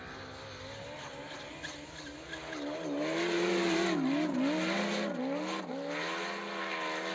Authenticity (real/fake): real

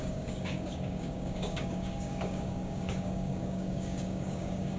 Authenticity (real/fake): fake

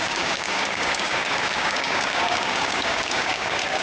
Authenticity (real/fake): fake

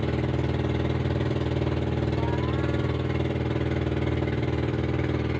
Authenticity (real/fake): real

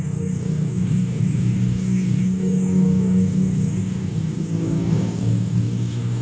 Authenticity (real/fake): fake